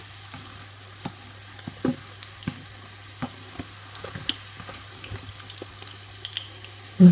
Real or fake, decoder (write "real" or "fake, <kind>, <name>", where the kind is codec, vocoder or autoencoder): real